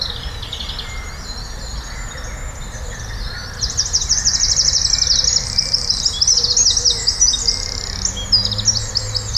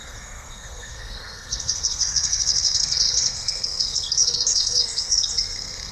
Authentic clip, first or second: first